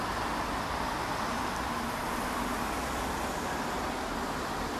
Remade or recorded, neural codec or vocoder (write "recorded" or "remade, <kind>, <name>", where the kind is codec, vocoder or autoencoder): recorded